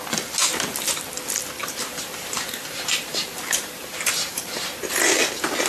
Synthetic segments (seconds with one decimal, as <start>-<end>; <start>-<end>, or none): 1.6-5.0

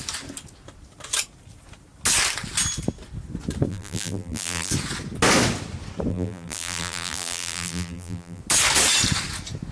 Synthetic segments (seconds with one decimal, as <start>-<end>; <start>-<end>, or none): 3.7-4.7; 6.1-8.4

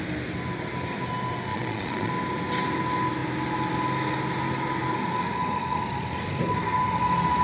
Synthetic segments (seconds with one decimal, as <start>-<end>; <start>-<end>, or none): 1.5-2.1

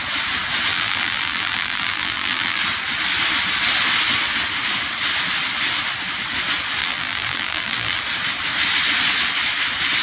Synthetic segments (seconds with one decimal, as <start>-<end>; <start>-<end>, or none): 0.7-2.6; 6.8-8.0

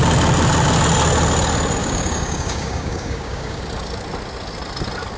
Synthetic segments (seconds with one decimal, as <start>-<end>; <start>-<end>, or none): 1.8-3.6